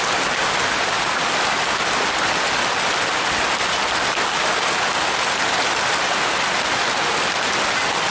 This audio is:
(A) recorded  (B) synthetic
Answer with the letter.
A